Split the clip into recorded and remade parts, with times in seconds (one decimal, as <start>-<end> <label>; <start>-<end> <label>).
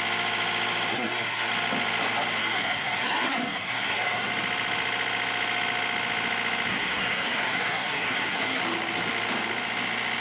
0.0-0.9 recorded; 0.9-1.5 remade; 1.5-2.4 recorded; 2.4-4.3 remade; 4.3-6.7 recorded; 6.7-8.6 remade; 8.6-10.2 recorded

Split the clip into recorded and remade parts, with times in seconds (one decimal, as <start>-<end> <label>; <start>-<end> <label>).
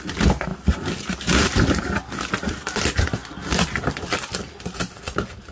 0.0-3.2 recorded; 3.2-4.4 remade; 4.4-5.5 recorded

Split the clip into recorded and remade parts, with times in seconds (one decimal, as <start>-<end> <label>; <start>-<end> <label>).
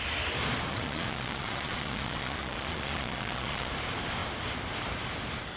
0.0-0.7 recorded; 0.7-3.7 remade; 3.7-5.6 recorded